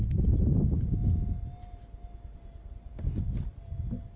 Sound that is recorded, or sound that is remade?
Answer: recorded